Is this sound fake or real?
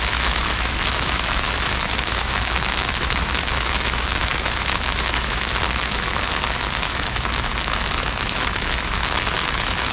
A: fake